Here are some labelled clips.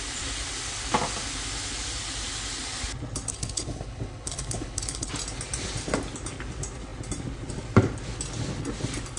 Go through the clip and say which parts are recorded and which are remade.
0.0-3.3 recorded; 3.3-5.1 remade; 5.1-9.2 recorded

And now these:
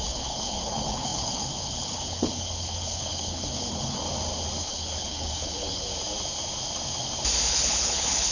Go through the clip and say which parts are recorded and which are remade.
0.0-4.0 remade; 4.0-4.6 recorded; 4.6-5.9 remade; 5.9-7.5 recorded; 7.5-8.3 remade